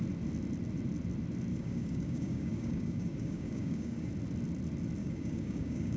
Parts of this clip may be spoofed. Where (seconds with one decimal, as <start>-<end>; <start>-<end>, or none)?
1.5-4.1; 5.0-6.0